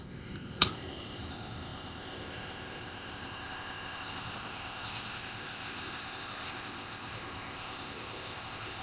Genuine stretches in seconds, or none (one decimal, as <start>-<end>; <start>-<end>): none